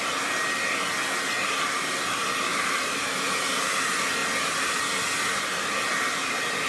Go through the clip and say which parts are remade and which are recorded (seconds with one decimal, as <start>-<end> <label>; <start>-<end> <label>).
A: 0.0-2.5 recorded; 2.5-3.8 remade; 3.8-6.7 recorded